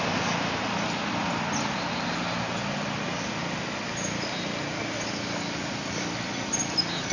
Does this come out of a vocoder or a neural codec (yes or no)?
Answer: no